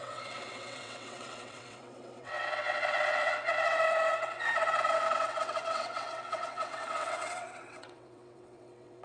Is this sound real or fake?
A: fake